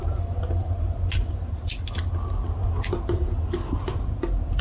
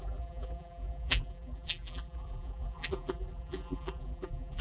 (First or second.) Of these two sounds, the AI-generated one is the second